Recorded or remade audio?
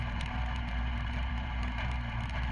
remade